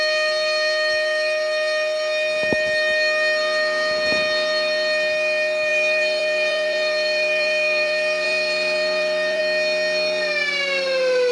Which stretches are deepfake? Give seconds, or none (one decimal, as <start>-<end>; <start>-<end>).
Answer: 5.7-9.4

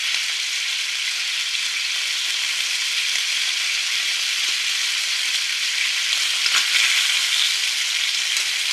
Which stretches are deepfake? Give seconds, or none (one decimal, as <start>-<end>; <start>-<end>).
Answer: none

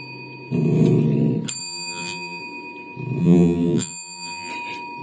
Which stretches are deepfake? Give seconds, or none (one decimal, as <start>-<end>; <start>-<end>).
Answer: 1.6-2.4; 3.2-4.5